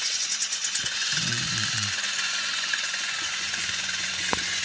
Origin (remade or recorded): remade